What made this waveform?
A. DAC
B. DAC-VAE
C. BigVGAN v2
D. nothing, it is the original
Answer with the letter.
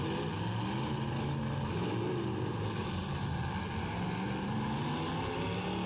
D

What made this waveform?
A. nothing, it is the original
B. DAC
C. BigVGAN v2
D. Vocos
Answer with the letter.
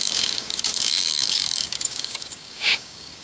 B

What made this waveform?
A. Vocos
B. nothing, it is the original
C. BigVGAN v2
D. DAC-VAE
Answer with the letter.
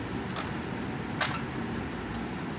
B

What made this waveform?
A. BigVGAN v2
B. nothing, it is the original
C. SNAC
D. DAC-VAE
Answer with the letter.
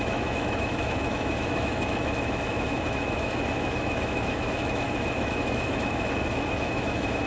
D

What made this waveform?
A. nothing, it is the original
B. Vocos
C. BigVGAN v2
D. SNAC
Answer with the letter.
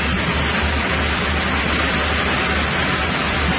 A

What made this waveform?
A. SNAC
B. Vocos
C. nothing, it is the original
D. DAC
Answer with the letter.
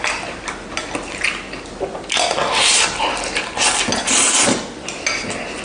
C